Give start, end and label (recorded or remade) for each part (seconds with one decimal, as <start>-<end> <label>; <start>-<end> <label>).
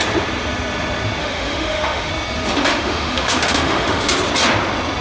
0.0-1.2 recorded; 1.2-2.1 remade; 2.1-2.7 recorded; 2.7-4.1 remade; 4.1-5.0 recorded